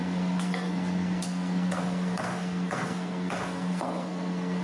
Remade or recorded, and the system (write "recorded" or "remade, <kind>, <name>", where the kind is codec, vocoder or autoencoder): remade, codec, SNAC